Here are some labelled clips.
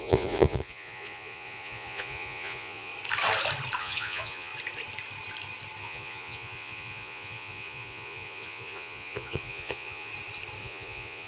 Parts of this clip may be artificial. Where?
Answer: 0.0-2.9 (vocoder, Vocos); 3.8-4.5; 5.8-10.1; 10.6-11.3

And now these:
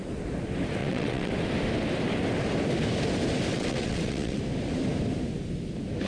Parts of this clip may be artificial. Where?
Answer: 0.8-1.3 (vocoder, WaveNeXt); 3.5-4.4

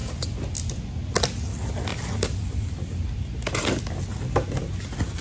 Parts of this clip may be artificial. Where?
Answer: none

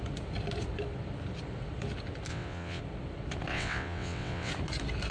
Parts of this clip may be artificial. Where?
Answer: 2.3-2.8 (vocoder, WaveNeXt); 3.5-4.5

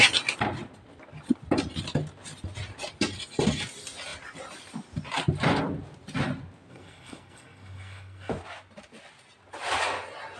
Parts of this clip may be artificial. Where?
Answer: 6.7-8.3 (codec, SNAC)